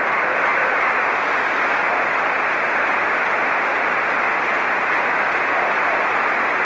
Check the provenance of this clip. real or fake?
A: real